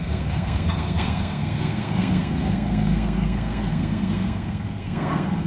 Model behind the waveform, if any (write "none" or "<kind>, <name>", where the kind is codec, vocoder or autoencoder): codec, SNAC